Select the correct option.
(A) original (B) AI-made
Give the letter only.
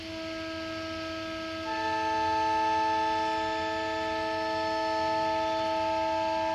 A